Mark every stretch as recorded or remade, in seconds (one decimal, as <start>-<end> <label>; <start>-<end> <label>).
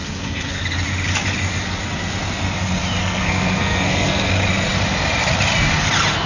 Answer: 0.0-0.6 remade; 0.6-3.0 recorded; 3.0-4.3 remade; 4.3-6.3 recorded